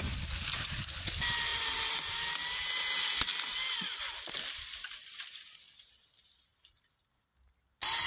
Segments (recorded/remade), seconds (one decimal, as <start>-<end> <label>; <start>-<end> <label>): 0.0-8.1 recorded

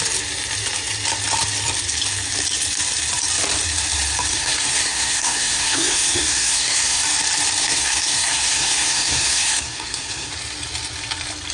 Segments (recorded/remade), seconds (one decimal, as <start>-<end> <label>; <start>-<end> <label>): 0.0-4.3 recorded; 4.3-7.0 remade; 7.0-7.6 recorded; 7.6-10.3 remade; 10.3-11.5 recorded

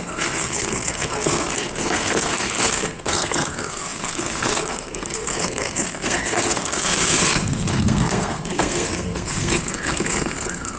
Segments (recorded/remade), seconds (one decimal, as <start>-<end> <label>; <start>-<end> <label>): 0.0-10.8 remade

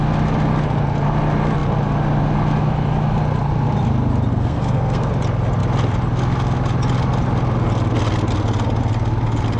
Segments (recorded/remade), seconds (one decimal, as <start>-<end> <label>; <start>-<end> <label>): 0.0-4.3 recorded; 4.3-5.1 remade; 5.1-9.6 recorded

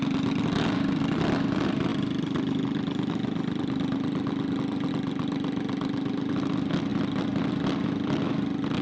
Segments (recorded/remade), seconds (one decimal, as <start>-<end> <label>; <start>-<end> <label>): 0.0-8.8 recorded